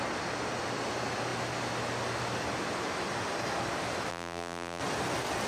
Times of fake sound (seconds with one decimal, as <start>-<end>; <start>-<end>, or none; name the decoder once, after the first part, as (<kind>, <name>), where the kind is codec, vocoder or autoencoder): 4.1-4.8 (vocoder, BigVGAN v2)